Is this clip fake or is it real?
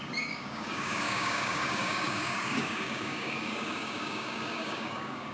fake